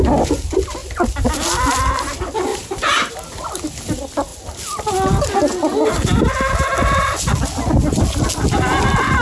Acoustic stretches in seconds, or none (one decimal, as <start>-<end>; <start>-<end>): 0.0-2.5; 3.1-9.2